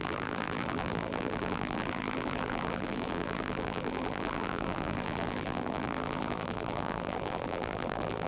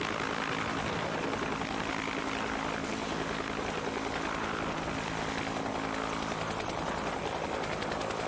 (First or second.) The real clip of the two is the second